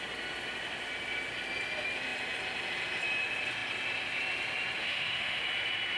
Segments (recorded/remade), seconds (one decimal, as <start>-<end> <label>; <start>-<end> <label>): 0.0-4.8 recorded; 4.8-5.4 remade; 5.4-6.0 recorded